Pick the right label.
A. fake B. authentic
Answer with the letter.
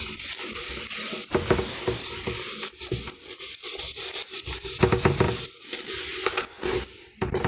B